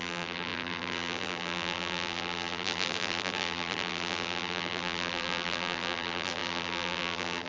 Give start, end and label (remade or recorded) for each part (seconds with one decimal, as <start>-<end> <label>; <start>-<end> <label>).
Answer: 0.0-7.5 remade